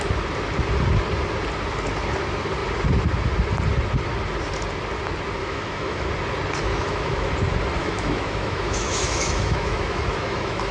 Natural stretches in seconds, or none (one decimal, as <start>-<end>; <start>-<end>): 0.0-5.4; 6.1-6.7; 7.3-7.8